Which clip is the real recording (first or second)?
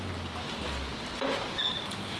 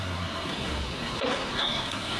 first